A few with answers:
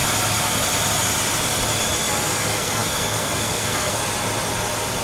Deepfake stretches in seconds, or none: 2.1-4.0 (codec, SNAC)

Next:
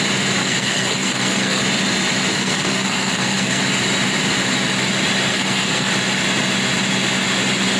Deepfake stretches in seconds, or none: 0.4-1.6 (codec, SNAC); 2.3-3.6; 5.3-5.9

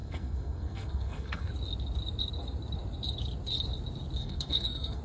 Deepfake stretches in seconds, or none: 0.0-1.5 (codec, SNAC); 4.2-5.0

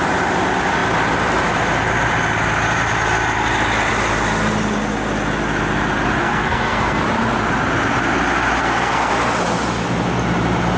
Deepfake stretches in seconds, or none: 6.2-7.0 (codec, SNAC); 8.6-9.1

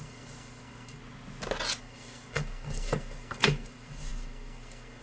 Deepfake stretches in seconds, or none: 0.0-1.0 (codec, SNAC); 1.8-5.0

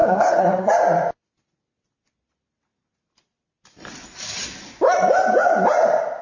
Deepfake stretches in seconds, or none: 0.0-0.7 (codec, SNAC)

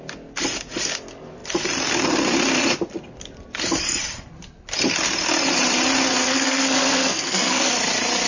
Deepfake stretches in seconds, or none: 6.2-7.7 (codec, SNAC)